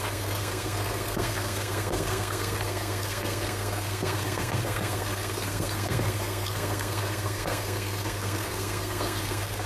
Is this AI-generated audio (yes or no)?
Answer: yes